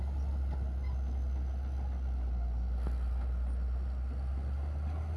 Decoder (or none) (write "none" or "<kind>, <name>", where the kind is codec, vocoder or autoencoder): none